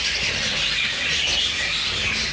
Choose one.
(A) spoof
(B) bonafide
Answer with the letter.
B